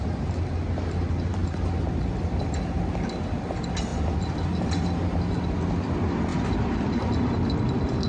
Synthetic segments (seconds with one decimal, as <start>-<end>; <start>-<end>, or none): none